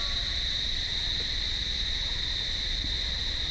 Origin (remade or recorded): recorded